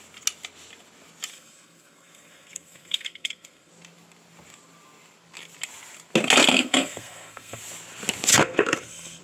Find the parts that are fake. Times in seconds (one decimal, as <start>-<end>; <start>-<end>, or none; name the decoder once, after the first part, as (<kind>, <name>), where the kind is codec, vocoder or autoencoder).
1.3-3.7 (codec, SNAC); 6.5-7.6; 8.3-9.2